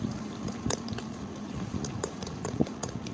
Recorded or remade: remade